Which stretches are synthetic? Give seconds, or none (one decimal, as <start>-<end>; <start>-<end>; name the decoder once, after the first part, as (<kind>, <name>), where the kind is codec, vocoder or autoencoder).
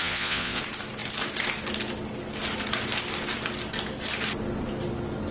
0.0-0.6 (vocoder, Vocos)